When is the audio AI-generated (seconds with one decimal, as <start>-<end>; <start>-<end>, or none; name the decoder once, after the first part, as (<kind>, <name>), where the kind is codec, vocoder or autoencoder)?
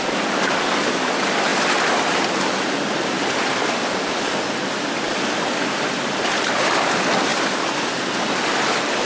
0.0-1.5 (vocoder, BigVGAN v2); 2.3-7.3; 8.1-9.1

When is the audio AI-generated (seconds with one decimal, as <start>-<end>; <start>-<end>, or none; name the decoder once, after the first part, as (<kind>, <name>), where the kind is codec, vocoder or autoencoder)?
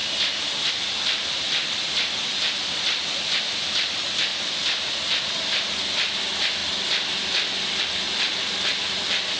0.7-4.3 (vocoder, BigVGAN v2); 5.2-6.6; 7.8-9.4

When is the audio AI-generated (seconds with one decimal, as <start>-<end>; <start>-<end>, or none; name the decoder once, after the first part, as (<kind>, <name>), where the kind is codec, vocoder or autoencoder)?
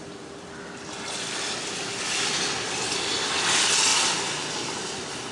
0.0-2.3 (vocoder, BigVGAN v2)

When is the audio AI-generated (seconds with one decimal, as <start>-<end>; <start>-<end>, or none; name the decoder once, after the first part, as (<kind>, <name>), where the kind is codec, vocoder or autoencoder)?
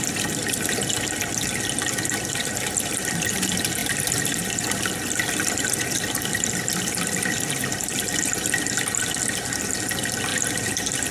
2.4-3.1 (vocoder, BigVGAN v2); 3.8-8.6; 10.3-11.1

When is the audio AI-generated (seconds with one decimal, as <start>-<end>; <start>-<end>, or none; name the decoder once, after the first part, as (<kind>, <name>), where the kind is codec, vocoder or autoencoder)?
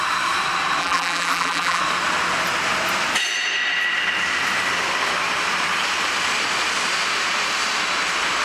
0.8-1.8 (vocoder, BigVGAN v2)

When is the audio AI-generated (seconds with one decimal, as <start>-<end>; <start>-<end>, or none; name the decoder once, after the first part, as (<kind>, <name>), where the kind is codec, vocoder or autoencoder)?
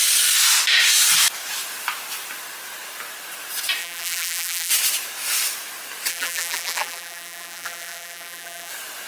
3.8-4.7 (vocoder, BigVGAN v2); 6.1-8.7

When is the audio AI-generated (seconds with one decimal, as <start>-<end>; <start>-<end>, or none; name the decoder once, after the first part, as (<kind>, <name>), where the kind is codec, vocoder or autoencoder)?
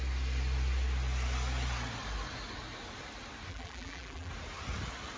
3.5-4.3 (vocoder, BigVGAN v2)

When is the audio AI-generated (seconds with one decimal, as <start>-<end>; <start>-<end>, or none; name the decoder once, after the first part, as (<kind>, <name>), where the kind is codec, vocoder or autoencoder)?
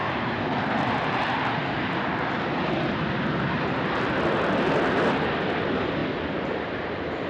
0.0-0.7 (vocoder, BigVGAN v2)